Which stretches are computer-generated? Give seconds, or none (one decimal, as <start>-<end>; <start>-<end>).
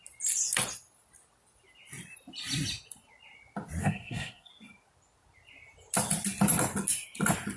3.8-4.5